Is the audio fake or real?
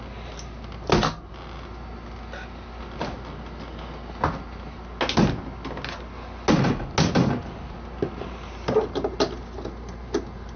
real